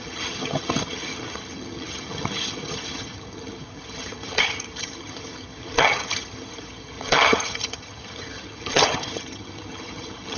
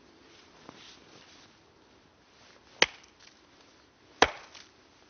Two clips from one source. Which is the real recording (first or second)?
second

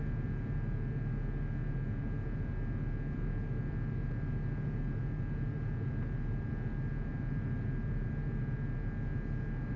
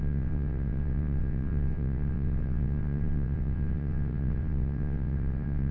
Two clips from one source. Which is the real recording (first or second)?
first